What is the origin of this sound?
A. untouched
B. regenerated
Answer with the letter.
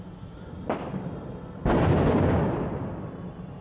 B